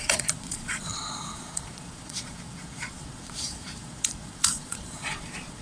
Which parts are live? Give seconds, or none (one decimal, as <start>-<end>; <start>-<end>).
none